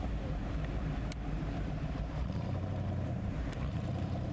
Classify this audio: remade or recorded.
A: remade